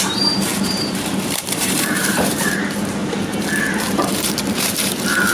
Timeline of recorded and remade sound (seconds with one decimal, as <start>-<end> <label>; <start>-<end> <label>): 0.0-3.0 remade; 3.0-3.7 recorded; 3.7-5.3 remade